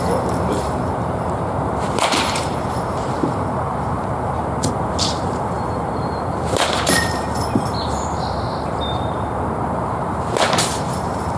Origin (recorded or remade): remade